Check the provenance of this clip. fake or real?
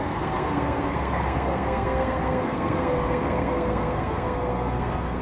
fake